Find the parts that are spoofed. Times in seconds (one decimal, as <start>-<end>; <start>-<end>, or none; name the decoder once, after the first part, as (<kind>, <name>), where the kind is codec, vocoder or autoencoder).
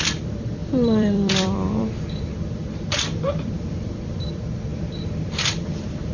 0.6-4.3 (vocoder, BigVGAN v2); 4.7-6.1